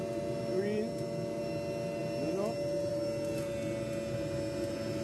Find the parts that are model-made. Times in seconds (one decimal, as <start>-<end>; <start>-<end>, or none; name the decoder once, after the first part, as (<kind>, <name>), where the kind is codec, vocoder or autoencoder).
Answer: none